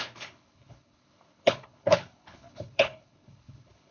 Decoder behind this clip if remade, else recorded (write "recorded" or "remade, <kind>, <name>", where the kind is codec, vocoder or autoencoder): remade, codec, HILCodec